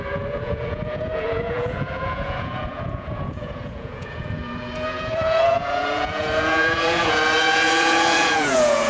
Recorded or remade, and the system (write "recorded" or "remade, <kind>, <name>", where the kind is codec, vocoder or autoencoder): remade, vocoder, Vocos